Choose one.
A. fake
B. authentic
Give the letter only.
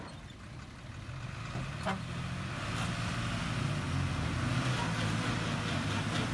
B